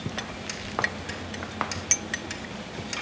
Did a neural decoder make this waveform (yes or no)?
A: no